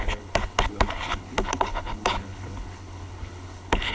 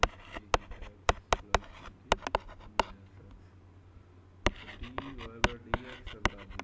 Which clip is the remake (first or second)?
first